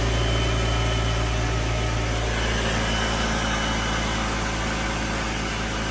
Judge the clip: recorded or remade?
recorded